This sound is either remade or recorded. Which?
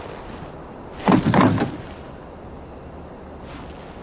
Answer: recorded